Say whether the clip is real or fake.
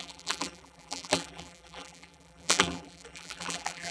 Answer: fake